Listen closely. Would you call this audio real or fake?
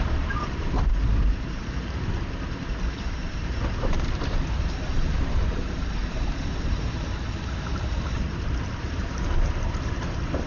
fake